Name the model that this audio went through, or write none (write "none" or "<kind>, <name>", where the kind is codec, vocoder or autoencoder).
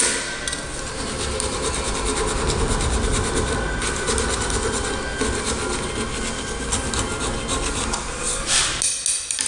none